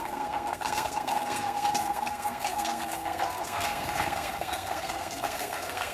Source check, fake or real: fake